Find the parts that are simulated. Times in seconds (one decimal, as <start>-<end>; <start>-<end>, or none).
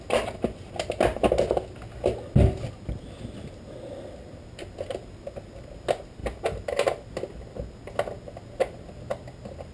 none